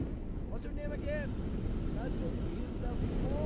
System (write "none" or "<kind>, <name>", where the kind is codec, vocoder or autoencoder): none